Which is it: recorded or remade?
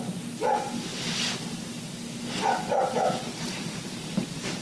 recorded